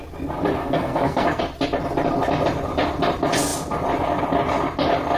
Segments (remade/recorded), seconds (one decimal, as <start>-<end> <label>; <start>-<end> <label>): 0.0-0.6 recorded; 0.6-1.4 remade; 1.4-5.2 recorded